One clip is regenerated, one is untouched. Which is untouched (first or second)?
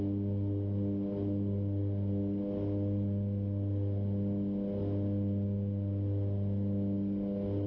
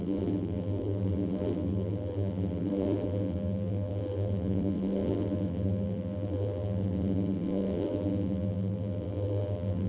first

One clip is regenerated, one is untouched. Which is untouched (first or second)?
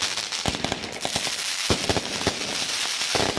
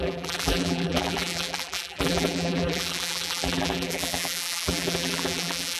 first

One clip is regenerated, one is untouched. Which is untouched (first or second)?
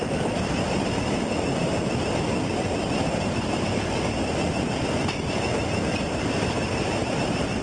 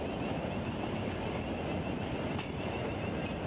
second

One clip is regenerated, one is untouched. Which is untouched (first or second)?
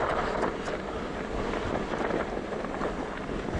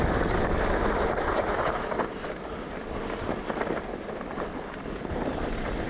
first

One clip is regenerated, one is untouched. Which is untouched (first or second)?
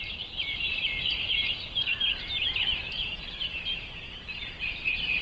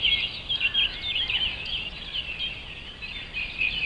second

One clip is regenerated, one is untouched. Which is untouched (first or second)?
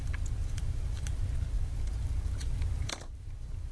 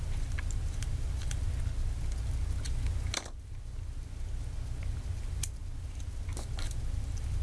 second